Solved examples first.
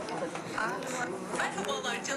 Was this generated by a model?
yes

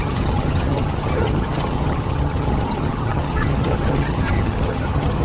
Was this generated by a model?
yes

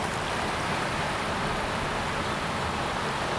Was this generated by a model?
no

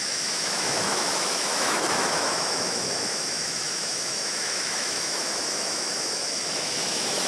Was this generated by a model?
yes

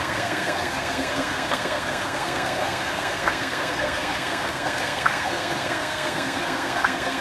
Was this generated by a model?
yes